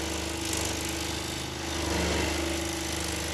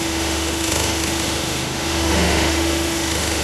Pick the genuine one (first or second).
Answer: first